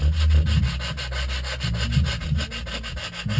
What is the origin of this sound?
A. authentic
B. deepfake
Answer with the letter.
A